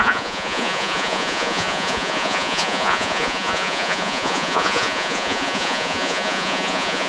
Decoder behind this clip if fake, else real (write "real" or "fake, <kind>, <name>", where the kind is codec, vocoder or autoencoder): fake, vocoder, Vocos